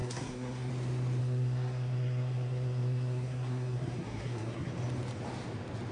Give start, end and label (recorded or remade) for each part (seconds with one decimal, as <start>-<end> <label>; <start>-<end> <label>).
0.0-0.7 remade; 0.7-1.2 recorded; 1.2-4.7 remade; 4.7-5.9 recorded